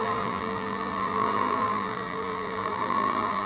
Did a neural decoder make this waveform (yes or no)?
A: yes